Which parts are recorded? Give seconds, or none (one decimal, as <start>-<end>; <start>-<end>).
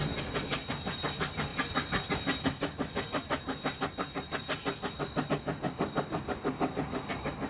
0.0-7.5